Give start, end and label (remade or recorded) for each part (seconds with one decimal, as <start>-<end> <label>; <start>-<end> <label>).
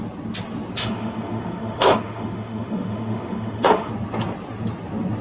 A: 0.0-0.8 recorded; 0.8-3.9 remade; 3.9-5.2 recorded